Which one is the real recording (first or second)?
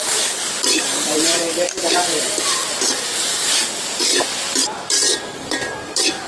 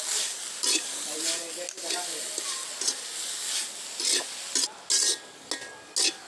second